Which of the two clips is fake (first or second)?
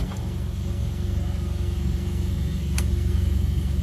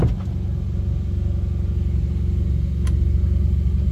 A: first